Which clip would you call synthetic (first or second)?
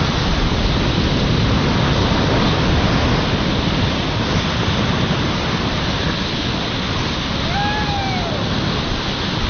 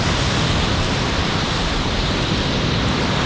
second